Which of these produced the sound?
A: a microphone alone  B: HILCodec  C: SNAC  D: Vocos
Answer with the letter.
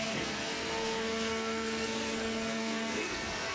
C